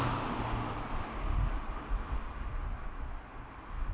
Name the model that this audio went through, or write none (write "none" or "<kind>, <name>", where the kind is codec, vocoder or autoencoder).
none